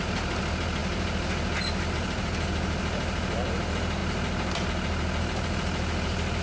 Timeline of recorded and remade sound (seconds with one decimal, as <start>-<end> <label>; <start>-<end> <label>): 0.0-6.4 recorded